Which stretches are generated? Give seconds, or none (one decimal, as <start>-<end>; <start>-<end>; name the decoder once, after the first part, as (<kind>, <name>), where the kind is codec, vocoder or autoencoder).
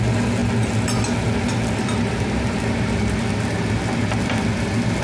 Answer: none